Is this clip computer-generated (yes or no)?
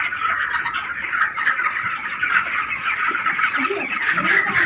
yes